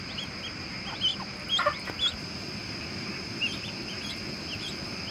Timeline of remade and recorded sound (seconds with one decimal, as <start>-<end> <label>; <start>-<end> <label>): 0.0-1.1 recorded; 1.1-1.9 remade; 1.9-2.6 recorded; 2.6-3.1 remade; 3.1-5.1 recorded